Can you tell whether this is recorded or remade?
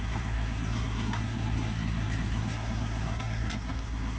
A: remade